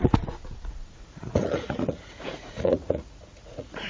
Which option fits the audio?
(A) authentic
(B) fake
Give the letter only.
B